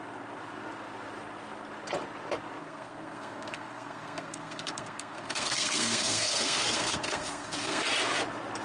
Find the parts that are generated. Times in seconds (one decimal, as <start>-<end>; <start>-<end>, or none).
2.6-7.8